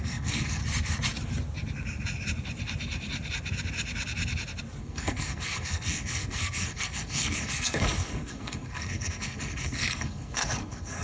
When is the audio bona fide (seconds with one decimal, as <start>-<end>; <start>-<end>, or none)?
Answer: 0.6-4.8